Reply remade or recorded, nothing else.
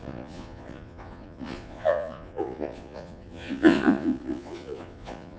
remade